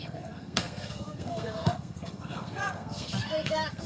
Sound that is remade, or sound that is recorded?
remade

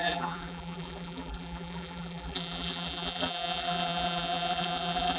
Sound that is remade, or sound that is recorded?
remade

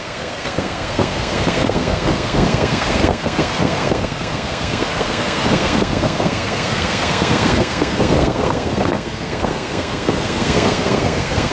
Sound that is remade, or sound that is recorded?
remade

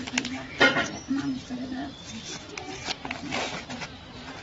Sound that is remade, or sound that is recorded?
recorded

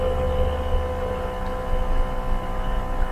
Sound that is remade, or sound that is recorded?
recorded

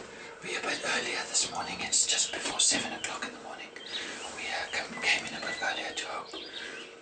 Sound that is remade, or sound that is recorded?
recorded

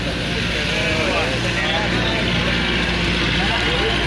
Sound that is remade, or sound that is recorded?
recorded